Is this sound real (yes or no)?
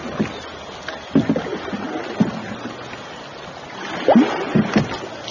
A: yes